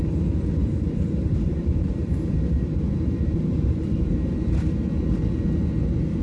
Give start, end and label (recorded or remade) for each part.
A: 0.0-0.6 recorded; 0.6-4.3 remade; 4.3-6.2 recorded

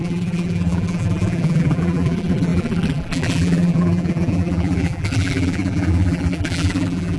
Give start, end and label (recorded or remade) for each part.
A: 0.0-7.2 remade